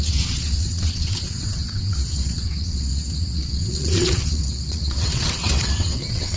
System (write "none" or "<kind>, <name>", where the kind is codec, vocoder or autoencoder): vocoder, WaveNeXt